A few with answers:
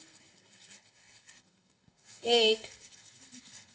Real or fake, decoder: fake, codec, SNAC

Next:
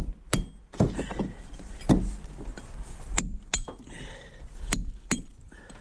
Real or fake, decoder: real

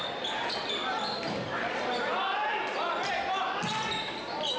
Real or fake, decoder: real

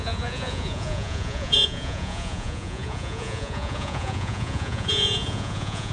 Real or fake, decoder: fake, vocoder, Vocos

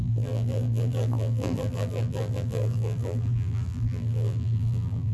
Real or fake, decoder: fake, vocoder, BigVGAN v2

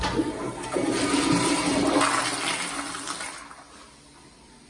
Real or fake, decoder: real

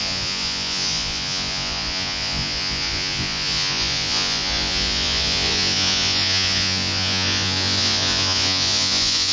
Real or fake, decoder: fake, vocoder, Vocos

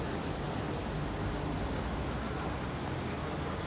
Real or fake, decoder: real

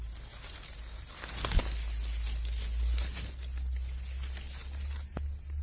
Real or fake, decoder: real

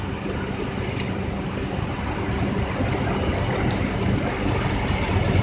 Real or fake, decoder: real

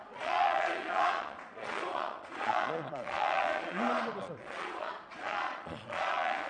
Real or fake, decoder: fake, vocoder, Vocos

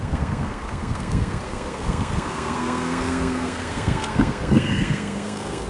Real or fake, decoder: fake, codec, SNAC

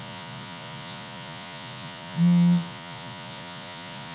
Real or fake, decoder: fake, vocoder, Vocos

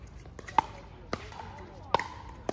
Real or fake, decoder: real